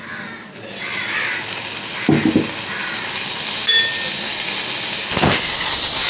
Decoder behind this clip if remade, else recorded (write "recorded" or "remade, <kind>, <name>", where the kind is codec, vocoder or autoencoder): recorded